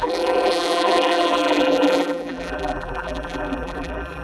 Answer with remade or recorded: remade